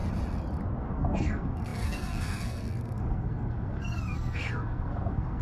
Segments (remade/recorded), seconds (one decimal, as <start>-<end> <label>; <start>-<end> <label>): 0.0-0.8 recorded; 0.8-5.4 remade